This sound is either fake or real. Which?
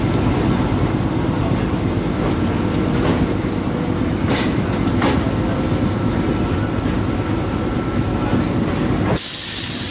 real